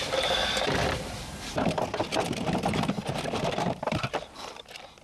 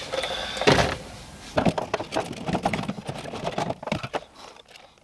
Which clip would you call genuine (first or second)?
second